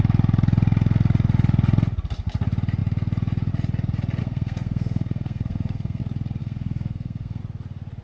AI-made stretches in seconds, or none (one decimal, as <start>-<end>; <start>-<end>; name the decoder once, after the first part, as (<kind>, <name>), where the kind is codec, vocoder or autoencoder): 4.2-6.0 (codec, SNAC); 6.4-7.4